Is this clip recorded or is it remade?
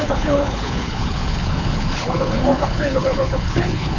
remade